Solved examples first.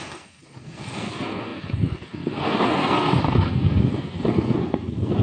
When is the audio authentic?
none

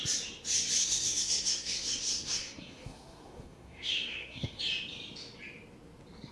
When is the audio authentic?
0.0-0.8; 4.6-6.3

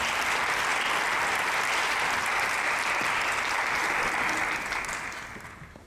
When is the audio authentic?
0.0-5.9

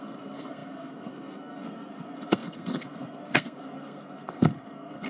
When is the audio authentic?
none

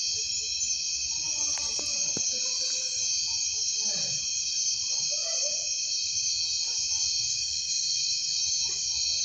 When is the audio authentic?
0.0-7.3; 8.0-9.2

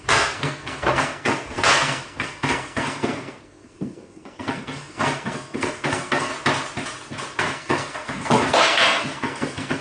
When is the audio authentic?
6.3-7.4

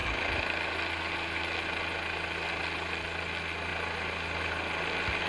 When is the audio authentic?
0.0-5.3